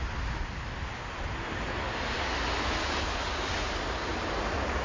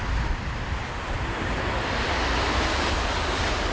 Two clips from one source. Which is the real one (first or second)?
first